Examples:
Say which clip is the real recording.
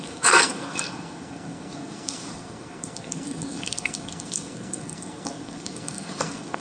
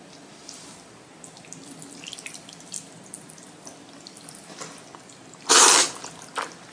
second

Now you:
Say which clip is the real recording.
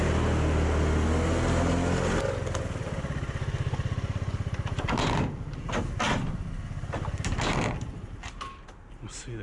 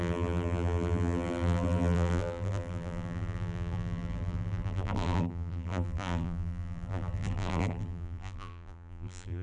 first